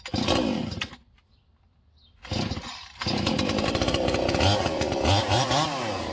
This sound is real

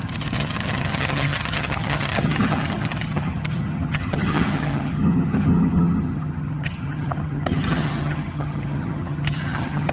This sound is fake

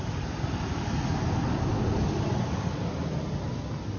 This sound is real